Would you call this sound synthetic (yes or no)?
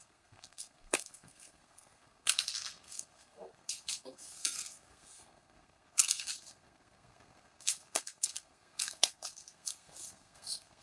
yes